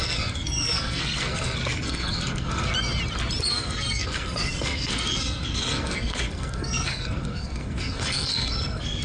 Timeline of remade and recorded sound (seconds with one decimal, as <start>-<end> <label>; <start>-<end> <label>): 0.0-2.7 remade; 2.7-3.4 recorded; 3.4-9.0 remade